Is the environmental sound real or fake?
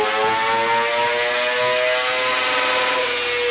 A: real